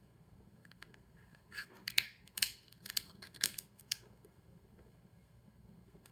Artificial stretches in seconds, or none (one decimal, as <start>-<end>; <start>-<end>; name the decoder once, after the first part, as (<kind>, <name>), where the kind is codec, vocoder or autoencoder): 0.0-6.1 (codec, SNAC)